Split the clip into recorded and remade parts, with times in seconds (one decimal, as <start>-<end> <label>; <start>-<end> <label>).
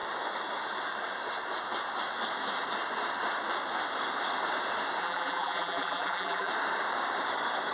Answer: 0.0-5.0 recorded; 5.0-6.5 remade; 6.5-7.7 recorded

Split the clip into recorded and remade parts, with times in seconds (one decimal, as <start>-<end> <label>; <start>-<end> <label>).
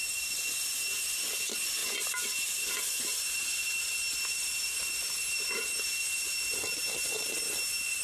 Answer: 0.0-8.0 recorded